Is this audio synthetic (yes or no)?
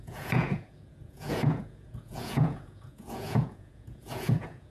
yes